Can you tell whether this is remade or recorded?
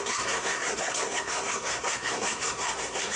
remade